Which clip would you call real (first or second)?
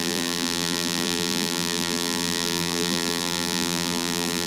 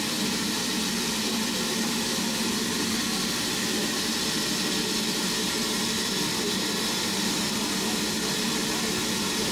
second